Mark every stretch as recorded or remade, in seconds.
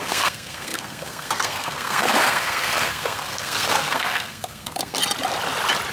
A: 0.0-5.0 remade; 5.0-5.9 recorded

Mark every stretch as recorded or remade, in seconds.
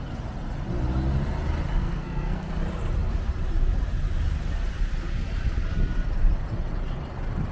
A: 0.0-1.8 recorded; 1.8-2.5 remade; 2.5-7.5 recorded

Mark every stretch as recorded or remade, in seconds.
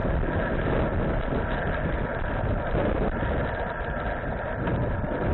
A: 0.0-5.3 recorded